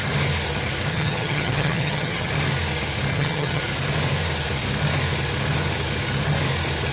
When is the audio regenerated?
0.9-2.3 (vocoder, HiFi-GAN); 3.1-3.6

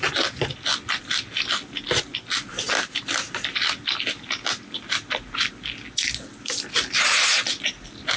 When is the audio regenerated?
none

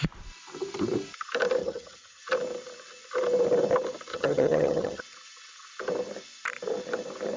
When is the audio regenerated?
1.6-2.2 (vocoder, HiFi-GAN); 4.1-5.0

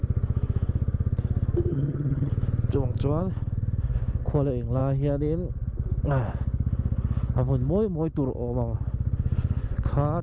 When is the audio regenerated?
1.7-2.3 (vocoder, HiFi-GAN)

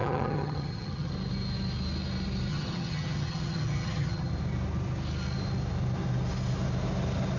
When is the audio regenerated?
0.0-1.1 (vocoder, HiFi-GAN); 2.5-4.3

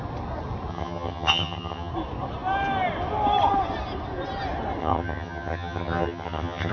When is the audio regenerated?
0.7-1.9 (vocoder, HiFi-GAN); 4.8-6.7